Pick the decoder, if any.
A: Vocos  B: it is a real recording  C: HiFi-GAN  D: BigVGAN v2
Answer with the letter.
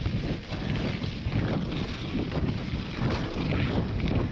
B